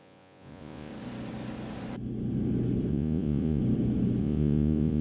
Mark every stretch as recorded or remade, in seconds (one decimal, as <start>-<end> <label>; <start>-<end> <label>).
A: 0.0-0.9 remade; 0.9-2.9 recorded; 2.9-3.6 remade; 3.6-4.2 recorded; 4.2-5.0 remade